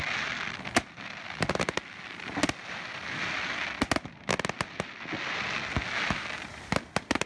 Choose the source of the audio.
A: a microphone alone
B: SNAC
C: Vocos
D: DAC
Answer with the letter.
A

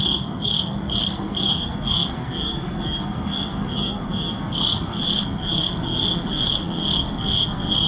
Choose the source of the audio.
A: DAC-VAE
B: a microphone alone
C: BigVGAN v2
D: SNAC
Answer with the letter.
D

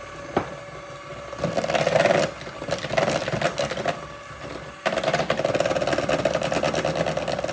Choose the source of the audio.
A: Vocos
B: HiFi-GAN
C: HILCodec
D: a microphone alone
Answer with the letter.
D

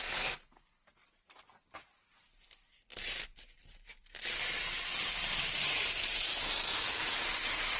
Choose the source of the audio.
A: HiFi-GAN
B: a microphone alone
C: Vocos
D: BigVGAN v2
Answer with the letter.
D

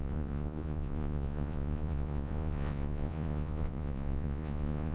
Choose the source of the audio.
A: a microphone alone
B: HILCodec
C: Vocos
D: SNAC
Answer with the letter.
C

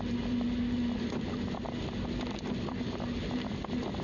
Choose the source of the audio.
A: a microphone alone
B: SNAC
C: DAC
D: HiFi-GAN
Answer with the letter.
A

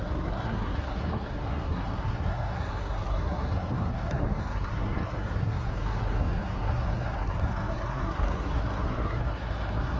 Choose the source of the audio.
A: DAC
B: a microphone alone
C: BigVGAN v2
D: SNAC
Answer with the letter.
D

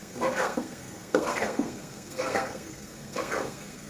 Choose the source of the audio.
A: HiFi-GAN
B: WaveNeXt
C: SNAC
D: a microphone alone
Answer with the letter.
C